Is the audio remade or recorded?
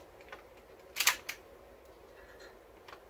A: recorded